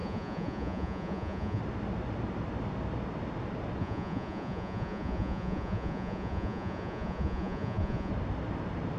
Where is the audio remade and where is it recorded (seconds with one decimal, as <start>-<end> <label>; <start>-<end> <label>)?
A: 0.0-1.6 remade; 1.6-3.8 recorded; 3.8-8.1 remade; 8.1-9.0 recorded